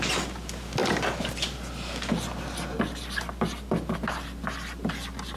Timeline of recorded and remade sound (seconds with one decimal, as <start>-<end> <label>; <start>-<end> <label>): 0.0-5.4 recorded